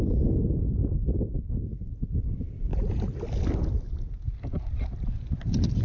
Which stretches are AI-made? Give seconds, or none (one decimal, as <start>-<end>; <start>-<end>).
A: none